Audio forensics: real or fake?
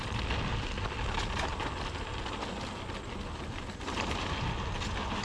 real